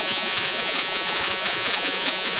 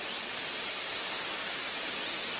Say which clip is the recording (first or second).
second